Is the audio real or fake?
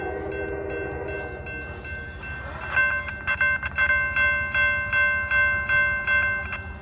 real